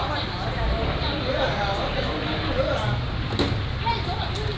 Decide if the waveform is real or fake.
real